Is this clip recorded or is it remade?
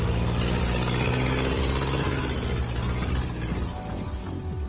recorded